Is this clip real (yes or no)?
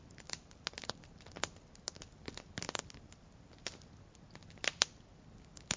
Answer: yes